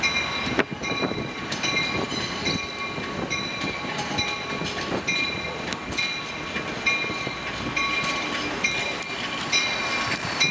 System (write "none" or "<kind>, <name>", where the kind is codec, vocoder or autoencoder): none